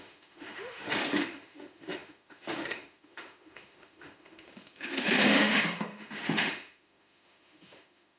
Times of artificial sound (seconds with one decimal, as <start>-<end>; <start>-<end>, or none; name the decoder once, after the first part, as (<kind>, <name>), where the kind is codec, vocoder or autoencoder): 0.0-8.2 (autoencoder, DAC-VAE)

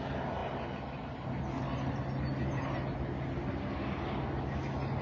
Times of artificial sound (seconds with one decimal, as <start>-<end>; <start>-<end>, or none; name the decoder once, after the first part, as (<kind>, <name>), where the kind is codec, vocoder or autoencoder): none

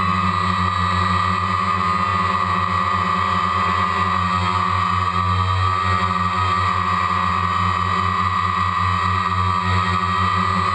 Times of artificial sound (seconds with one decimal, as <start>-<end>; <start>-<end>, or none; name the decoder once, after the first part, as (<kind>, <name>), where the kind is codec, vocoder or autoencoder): none

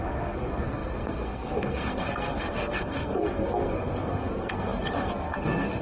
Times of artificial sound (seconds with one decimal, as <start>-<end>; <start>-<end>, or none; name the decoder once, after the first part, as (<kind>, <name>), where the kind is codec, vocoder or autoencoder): 0.0-5.8 (codec, SNAC)

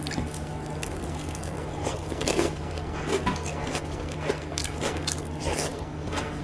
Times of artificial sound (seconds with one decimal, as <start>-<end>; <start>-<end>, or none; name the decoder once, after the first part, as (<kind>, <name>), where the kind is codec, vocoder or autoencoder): 0.0-6.4 (codec, SNAC)